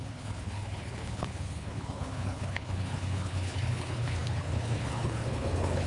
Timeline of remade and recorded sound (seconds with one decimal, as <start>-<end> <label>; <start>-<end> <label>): 0.0-5.9 remade